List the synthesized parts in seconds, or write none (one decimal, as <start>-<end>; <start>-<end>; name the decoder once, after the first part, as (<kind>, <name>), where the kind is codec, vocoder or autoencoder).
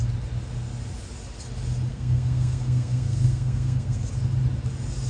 1.9-4.1 (codec, SNAC)